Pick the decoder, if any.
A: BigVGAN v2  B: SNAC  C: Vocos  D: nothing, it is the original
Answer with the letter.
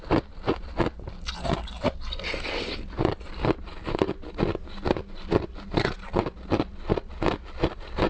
D